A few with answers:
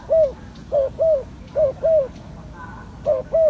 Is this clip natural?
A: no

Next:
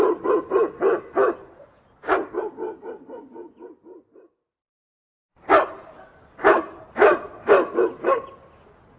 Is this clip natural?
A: yes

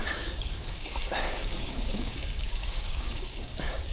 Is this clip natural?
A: no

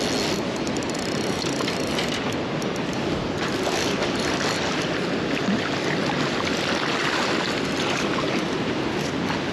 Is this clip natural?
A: yes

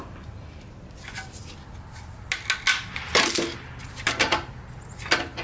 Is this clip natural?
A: yes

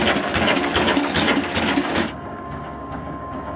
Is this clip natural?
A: no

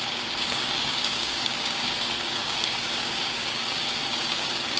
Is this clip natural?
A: no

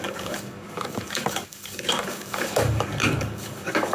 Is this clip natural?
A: no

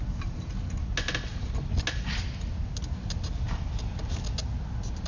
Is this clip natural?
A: yes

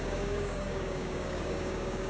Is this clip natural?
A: no